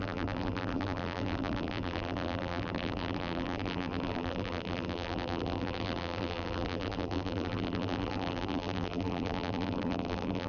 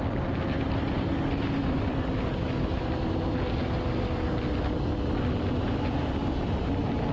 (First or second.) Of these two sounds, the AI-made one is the first